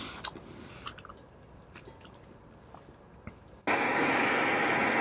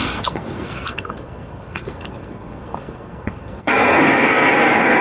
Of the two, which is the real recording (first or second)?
first